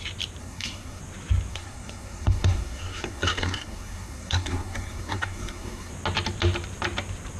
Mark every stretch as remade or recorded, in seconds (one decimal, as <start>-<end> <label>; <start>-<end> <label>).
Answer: 0.0-0.4 recorded; 0.4-1.0 remade; 1.0-1.5 recorded; 1.5-5.9 remade; 5.9-7.4 recorded